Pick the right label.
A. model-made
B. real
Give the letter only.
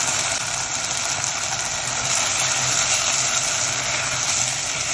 B